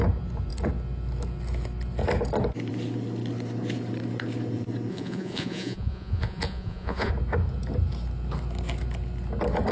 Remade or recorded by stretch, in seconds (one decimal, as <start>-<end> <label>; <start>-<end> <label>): 0.0-4.9 recorded; 4.9-7.1 remade; 7.1-9.7 recorded